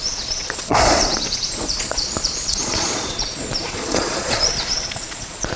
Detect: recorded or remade remade